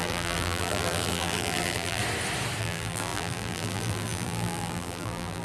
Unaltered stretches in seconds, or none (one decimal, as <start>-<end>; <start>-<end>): 2.0-2.6